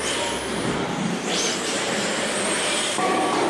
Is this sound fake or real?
fake